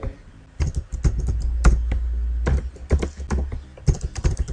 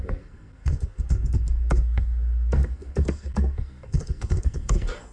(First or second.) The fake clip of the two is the second